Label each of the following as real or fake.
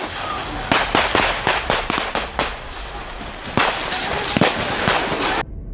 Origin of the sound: real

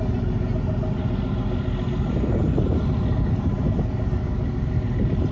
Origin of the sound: real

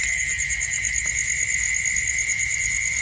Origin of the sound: real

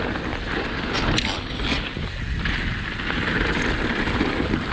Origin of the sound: real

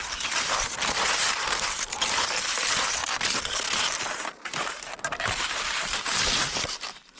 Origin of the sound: real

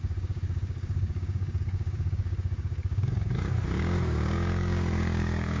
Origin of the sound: fake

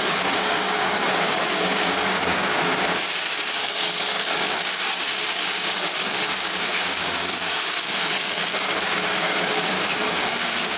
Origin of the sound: fake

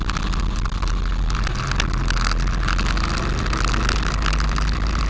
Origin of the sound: real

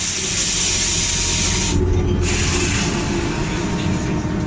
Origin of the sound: real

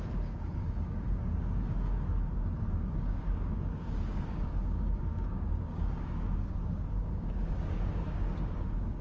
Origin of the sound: fake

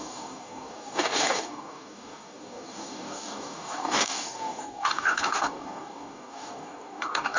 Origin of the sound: fake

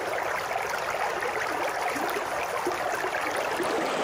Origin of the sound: real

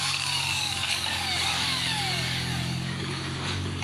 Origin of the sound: fake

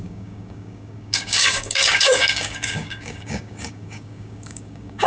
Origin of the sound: fake